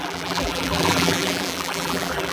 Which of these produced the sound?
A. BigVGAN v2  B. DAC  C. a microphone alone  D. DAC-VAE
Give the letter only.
A